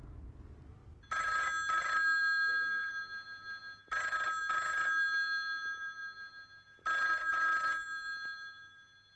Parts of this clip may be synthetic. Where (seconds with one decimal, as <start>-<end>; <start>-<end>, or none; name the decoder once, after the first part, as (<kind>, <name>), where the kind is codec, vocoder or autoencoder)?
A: none